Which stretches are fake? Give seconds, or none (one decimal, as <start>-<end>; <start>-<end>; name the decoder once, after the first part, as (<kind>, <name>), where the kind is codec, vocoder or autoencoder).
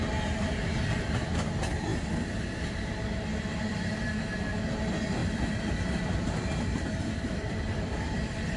3.3-3.9 (vocoder, BigVGAN v2); 5.2-8.1